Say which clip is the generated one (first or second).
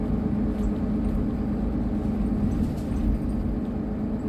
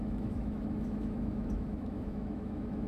second